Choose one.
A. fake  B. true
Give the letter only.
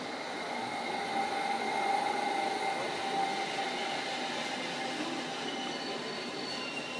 B